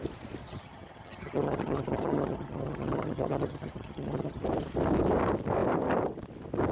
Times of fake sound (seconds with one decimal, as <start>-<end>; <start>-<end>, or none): 0.4-4.4